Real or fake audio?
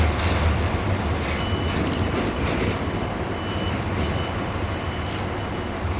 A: real